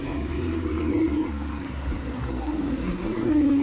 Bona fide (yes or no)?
no